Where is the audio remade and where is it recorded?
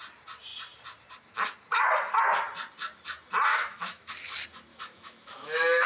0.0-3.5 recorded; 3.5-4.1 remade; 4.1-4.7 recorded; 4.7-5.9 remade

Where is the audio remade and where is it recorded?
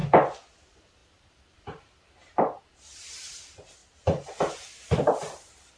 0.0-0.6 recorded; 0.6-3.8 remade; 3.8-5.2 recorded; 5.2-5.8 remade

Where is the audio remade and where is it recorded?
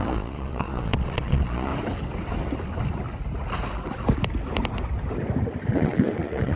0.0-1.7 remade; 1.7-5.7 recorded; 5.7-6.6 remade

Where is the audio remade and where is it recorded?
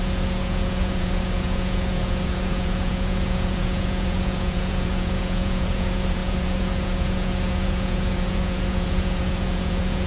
0.0-10.1 remade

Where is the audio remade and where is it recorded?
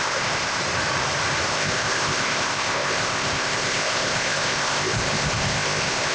0.0-0.6 remade; 0.6-1.5 recorded; 1.5-6.1 remade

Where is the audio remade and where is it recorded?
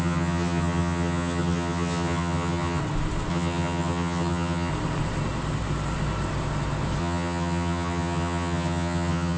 0.0-2.8 remade; 2.8-3.3 recorded; 3.3-4.7 remade; 4.7-7.0 recorded; 7.0-9.4 remade